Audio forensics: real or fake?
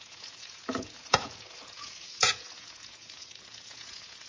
fake